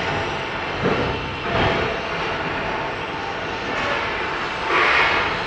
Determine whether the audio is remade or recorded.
recorded